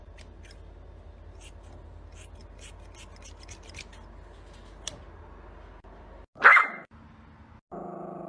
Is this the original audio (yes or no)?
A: yes